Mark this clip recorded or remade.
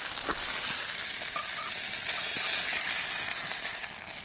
recorded